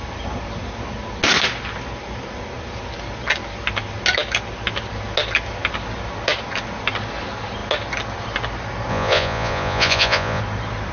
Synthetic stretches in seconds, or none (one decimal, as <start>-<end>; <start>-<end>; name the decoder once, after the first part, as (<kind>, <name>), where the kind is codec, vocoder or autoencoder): 8.9-10.4 (vocoder, Vocos)